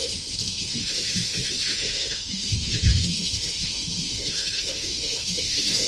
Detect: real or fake fake